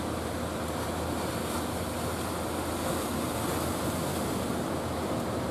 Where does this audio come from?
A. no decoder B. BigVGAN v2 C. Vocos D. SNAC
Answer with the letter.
A